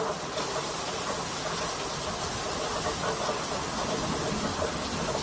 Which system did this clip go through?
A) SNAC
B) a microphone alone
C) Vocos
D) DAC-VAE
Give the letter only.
B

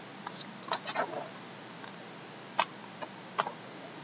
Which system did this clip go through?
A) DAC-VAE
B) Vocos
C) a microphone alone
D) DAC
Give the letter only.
C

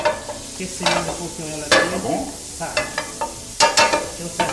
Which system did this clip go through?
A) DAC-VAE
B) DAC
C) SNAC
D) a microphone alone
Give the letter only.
D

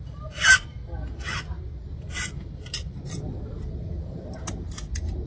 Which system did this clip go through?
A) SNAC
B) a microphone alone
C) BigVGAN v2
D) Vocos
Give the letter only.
B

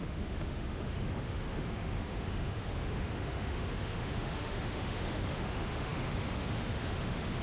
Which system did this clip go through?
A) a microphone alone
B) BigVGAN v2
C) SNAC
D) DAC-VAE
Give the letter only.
D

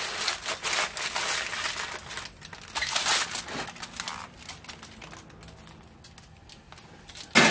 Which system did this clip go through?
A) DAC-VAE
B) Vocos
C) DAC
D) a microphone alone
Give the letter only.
D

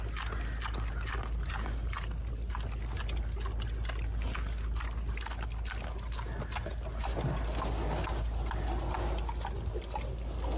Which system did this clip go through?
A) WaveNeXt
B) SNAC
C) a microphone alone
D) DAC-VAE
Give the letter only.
C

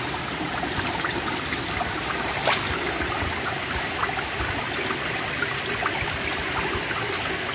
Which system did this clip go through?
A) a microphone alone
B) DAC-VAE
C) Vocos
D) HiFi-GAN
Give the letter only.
A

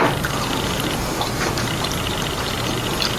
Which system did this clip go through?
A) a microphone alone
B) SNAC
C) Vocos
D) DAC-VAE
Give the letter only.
A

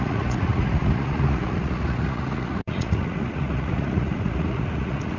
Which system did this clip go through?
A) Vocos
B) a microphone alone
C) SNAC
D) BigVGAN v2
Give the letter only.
A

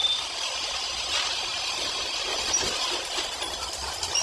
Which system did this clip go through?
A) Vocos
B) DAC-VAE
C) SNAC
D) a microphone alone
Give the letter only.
D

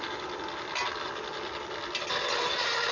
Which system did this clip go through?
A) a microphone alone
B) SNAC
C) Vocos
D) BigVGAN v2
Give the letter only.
A